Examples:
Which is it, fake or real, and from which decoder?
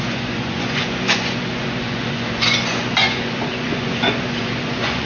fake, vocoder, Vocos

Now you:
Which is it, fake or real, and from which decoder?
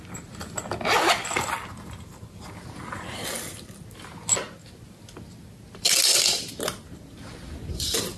real